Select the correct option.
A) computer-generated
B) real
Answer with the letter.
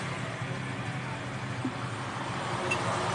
B